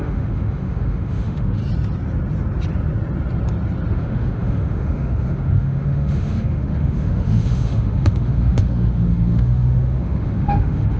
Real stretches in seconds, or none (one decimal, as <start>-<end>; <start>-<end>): 1.6-3.9